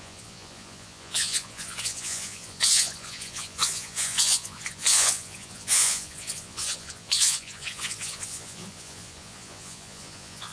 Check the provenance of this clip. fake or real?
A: fake